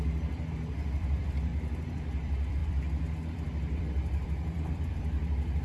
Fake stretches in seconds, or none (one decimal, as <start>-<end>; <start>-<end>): 0.0-1.5; 2.0-5.6